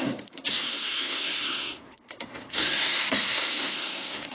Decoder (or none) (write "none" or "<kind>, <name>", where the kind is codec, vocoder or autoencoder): codec, SNAC